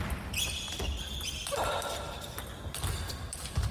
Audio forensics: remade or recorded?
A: recorded